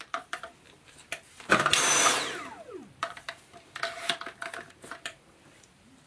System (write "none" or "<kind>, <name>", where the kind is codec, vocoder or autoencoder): vocoder, BigVGAN v2